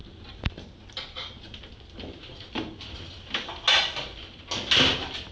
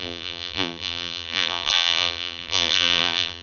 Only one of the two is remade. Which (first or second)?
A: second